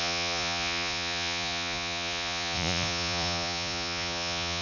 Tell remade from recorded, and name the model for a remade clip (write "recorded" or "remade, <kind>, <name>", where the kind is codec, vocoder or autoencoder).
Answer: remade, vocoder, Vocos